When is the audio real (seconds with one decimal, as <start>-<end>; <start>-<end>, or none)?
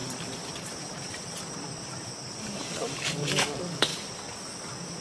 0.0-3.0; 3.9-5.0